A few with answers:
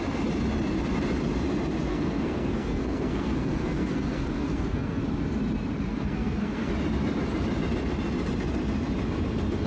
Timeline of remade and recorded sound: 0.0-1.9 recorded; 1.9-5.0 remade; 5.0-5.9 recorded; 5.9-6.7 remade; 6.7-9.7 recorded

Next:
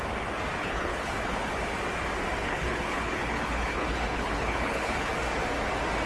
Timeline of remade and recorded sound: 0.0-0.6 recorded; 0.6-1.5 remade; 1.5-2.4 recorded; 2.4-5.1 remade; 5.1-6.1 recorded

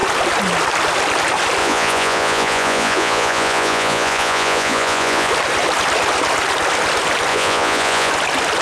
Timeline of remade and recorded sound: 0.0-1.6 recorded; 1.6-5.3 remade; 5.3-7.3 recorded; 7.3-8.1 remade; 8.1-8.6 recorded